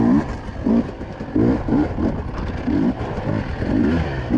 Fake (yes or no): no